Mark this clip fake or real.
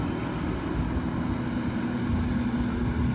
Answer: real